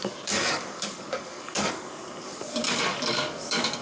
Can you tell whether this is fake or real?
fake